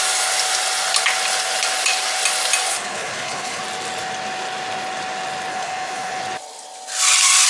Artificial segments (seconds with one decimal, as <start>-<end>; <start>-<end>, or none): 2.7-3.6; 5.5-6.2